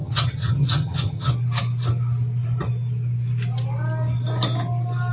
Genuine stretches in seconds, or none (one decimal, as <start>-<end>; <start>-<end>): 1.3-5.1